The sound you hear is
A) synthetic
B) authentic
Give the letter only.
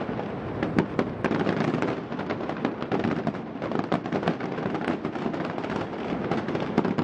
B